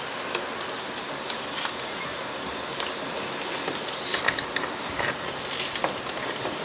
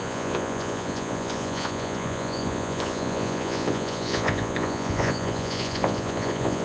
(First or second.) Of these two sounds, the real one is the first